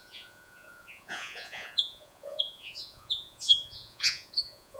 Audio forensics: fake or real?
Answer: fake